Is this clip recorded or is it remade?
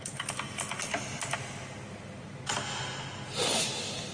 recorded